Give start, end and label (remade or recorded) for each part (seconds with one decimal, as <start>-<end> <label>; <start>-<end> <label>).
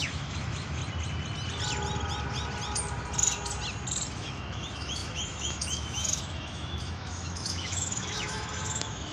0.0-0.8 remade; 0.8-4.1 recorded; 4.1-9.1 remade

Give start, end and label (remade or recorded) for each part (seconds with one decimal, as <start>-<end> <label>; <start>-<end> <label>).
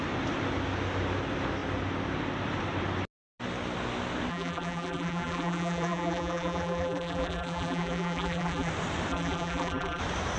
0.0-4.3 recorded; 4.3-8.7 remade; 8.7-9.1 recorded; 9.1-10.0 remade; 10.0-10.4 recorded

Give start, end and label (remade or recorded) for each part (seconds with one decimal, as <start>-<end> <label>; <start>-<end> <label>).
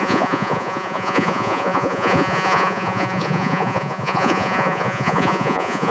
0.0-5.9 remade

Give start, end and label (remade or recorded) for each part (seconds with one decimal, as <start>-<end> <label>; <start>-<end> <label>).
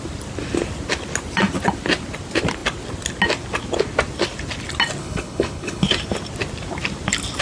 0.0-5.0 recorded; 5.0-5.9 remade; 5.9-7.4 recorded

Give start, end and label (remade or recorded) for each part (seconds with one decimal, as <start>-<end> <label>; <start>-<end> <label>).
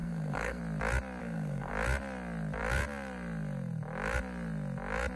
0.0-0.6 remade; 0.6-1.2 recorded; 1.2-1.7 remade; 1.7-5.2 recorded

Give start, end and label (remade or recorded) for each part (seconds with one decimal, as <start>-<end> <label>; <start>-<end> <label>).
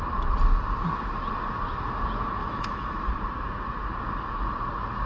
0.0-2.4 recorded; 2.4-3.1 remade; 3.1-5.1 recorded